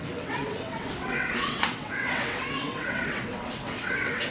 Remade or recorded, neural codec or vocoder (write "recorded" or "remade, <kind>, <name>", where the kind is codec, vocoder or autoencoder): remade, vocoder, WaveNeXt